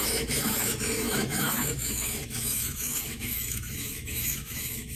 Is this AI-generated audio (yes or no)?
yes